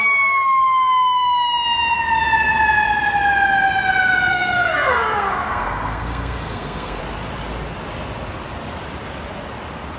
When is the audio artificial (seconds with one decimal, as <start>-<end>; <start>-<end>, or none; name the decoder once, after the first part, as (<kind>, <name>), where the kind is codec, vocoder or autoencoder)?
4.3-7.0 (codec, SNAC)